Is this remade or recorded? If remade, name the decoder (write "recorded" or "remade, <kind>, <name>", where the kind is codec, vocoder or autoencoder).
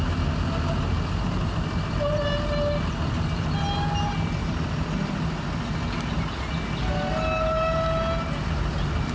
recorded